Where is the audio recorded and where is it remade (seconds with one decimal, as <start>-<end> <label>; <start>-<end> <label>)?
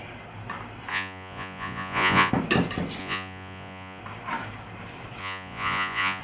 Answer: 0.0-0.9 recorded; 0.9-2.3 remade; 2.3-3.0 recorded; 3.0-4.0 remade; 4.0-5.2 recorded; 5.2-6.2 remade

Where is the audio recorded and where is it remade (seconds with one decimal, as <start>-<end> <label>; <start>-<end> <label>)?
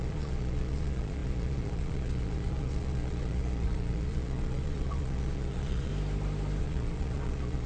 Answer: 0.0-5.9 remade; 5.9-6.6 recorded; 6.6-7.7 remade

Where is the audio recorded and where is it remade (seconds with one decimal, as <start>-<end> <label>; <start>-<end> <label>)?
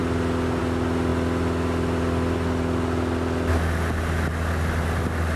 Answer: 0.0-5.4 recorded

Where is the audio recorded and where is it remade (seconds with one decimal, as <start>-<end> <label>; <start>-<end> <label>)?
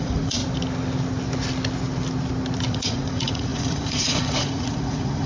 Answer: 0.0-0.4 remade; 0.4-2.7 recorded; 2.7-5.3 remade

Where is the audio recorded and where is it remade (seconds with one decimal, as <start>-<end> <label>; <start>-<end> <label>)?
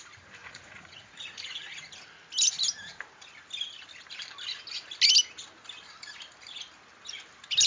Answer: 0.0-0.4 recorded; 0.4-1.9 remade; 1.9-7.7 recorded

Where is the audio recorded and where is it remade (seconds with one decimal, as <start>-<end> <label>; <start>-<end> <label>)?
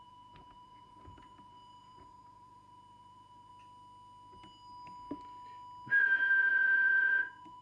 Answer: 0.0-3.5 remade; 3.5-6.0 recorded; 6.0-7.6 remade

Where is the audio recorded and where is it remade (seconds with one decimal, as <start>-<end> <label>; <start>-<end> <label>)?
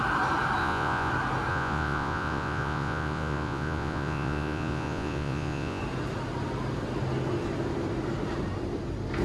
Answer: 0.0-0.6 recorded; 0.6-1.1 remade; 1.1-1.5 recorded; 1.5-5.8 remade; 5.8-9.2 recorded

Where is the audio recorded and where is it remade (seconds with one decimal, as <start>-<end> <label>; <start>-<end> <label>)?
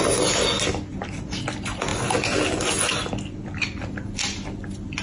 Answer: 0.0-5.0 recorded